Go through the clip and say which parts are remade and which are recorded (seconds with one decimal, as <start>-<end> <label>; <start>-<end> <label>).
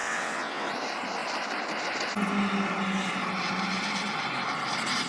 0.0-0.7 remade; 0.7-5.1 recorded